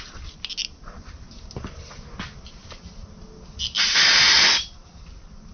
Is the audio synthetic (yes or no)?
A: no